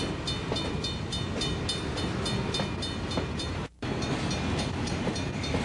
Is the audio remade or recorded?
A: recorded